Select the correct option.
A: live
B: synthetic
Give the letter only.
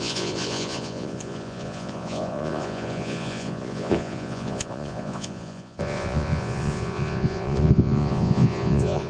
B